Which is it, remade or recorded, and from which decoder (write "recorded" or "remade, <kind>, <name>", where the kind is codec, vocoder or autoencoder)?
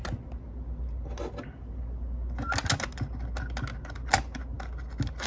recorded